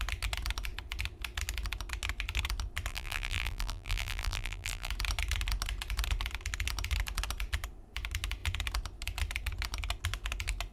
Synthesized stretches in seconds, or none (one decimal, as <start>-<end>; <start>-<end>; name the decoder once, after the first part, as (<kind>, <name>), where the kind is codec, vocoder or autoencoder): 2.9-4.9 (vocoder, BigVGAN v2)